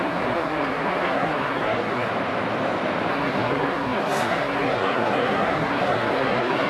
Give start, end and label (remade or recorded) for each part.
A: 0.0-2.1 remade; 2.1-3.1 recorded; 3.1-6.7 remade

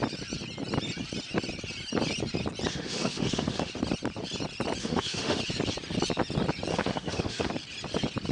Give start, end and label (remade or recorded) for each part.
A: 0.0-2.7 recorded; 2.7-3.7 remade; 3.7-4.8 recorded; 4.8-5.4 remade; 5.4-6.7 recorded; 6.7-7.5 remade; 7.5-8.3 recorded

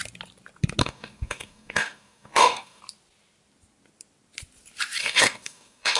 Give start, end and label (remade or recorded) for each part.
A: 0.0-0.8 recorded; 0.8-2.8 remade; 2.8-5.0 recorded; 5.0-6.0 remade